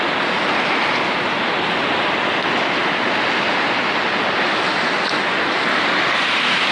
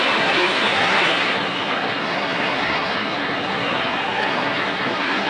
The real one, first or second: first